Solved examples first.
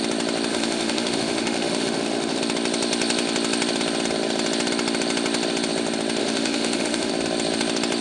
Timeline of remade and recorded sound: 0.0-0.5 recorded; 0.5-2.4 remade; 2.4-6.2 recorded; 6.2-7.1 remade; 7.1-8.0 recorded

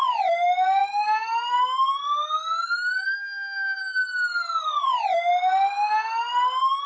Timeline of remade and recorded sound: 0.0-6.9 recorded

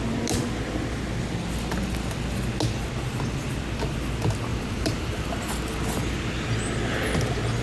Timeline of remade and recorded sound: 0.0-4.5 recorded; 4.5-5.5 remade; 5.5-7.6 recorded

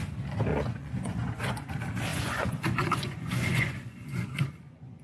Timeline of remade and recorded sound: 0.0-0.5 recorded; 0.5-1.7 remade; 1.7-2.1 recorded; 2.1-5.0 remade

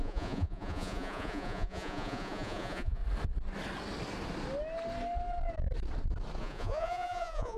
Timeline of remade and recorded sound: 0.0-3.0 remade; 3.0-6.4 recorded; 6.4-7.6 remade

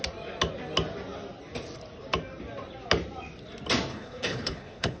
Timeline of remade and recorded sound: 0.0-3.9 recorded; 3.9-5.0 remade

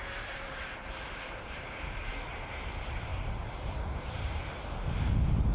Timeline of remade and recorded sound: 0.0-2.1 remade; 2.1-3.1 recorded; 3.1-4.5 remade; 4.5-5.5 recorded

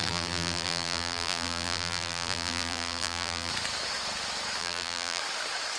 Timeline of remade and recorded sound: 0.0-3.5 remade; 3.5-4.6 recorded; 4.6-5.2 remade; 5.2-5.8 recorded